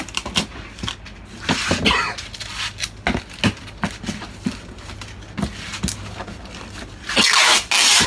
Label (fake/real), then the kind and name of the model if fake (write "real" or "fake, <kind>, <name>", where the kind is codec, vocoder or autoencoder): real